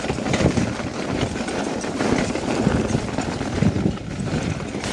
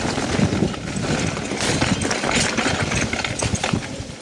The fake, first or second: first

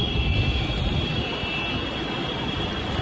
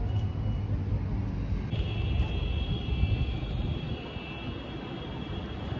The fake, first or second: first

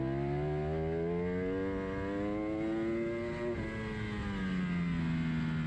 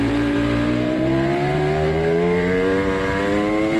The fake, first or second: second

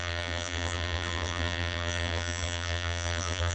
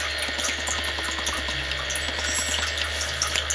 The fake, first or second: first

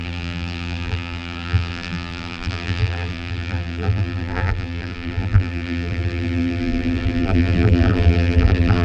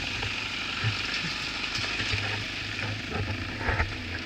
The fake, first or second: first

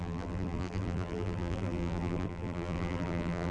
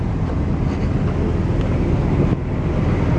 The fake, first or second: first